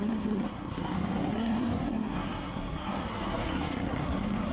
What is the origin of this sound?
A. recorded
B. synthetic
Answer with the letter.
B